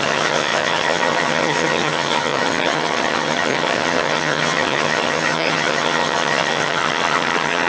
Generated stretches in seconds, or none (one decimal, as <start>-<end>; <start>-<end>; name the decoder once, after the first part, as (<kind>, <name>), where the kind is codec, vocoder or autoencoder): 0.0-7.7 (vocoder, HiFi-GAN)